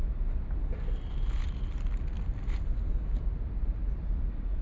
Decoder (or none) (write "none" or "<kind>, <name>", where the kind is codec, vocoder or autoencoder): none